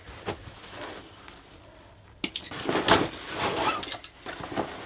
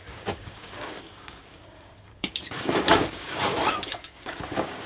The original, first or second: first